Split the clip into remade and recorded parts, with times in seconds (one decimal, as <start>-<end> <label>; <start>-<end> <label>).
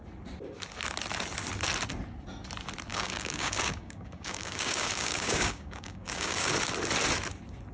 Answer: 0.0-2.9 recorded; 2.9-6.5 remade; 6.5-7.7 recorded